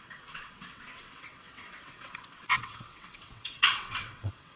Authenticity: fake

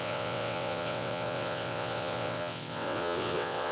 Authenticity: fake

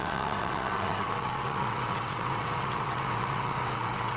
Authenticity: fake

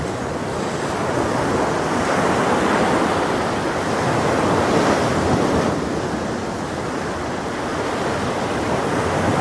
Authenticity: real